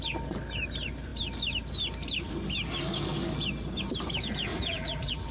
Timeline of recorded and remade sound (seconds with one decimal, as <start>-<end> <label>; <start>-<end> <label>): 0.0-4.5 recorded; 4.5-5.3 remade